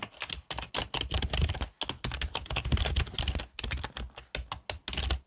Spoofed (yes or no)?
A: no